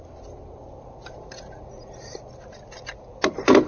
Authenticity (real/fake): real